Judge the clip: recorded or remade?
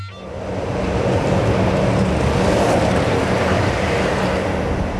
recorded